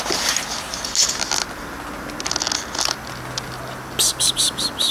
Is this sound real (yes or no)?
yes